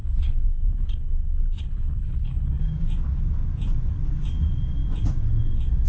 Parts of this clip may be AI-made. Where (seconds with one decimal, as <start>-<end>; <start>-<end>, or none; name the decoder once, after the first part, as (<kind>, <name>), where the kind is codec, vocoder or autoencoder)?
0.0-2.6 (codec, HILCodec)